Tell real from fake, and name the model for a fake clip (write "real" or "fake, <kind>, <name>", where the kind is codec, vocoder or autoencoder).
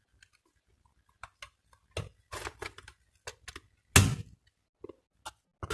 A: real